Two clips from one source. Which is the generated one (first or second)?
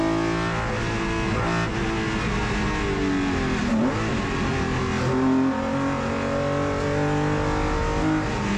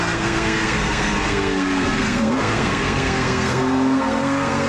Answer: second